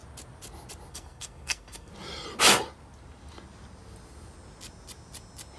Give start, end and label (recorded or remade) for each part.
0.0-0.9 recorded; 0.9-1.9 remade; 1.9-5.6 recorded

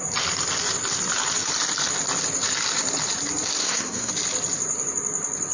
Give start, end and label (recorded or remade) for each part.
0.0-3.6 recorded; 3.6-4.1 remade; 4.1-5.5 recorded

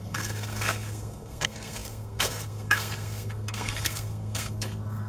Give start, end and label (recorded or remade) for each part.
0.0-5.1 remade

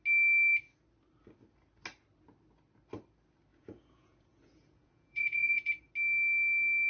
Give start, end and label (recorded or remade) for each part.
0.0-3.5 recorded; 3.5-5.9 remade; 5.9-6.9 recorded

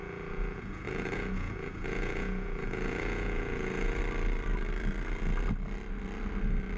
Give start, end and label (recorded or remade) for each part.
0.0-4.0 remade; 4.0-6.8 recorded